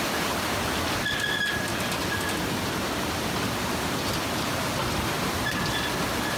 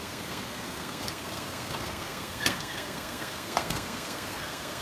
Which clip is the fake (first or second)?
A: second